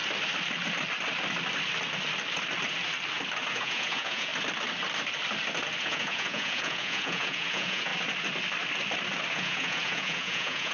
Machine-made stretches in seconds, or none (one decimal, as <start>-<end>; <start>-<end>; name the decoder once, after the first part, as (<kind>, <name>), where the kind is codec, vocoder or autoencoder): 3.5-4.3 (vocoder, Vocos); 5.8-7.9; 9.3-10.7